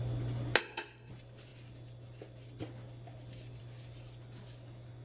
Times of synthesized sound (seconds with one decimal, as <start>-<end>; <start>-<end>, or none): 0.6-1.1